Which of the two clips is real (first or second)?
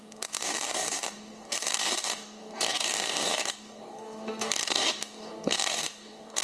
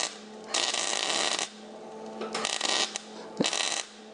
second